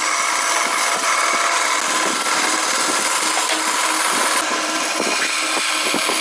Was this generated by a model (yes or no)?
no